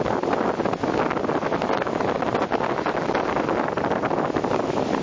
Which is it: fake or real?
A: real